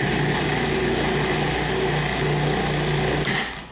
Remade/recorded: recorded